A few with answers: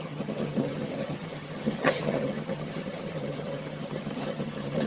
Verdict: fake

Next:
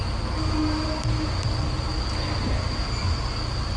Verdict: real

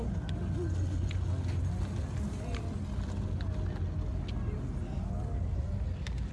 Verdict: real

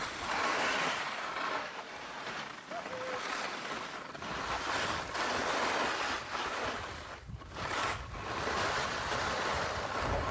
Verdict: real